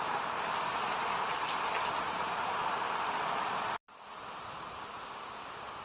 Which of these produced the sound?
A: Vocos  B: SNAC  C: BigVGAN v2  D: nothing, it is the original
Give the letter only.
C